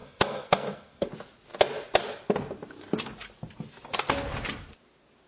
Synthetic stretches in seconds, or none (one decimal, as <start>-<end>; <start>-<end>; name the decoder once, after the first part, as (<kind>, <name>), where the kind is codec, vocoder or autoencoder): 0.0-1.1 (codec, SNAC)